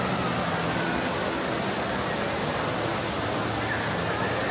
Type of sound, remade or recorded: recorded